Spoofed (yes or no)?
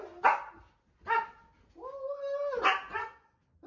no